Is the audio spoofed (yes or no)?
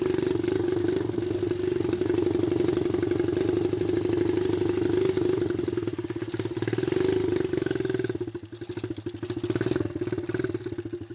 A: no